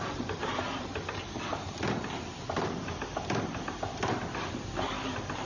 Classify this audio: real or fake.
fake